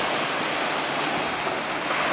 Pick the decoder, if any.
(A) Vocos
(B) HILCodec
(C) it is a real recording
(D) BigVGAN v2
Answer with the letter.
C